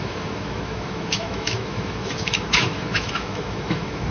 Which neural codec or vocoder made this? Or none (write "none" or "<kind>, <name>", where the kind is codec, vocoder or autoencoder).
autoencoder, DAC-VAE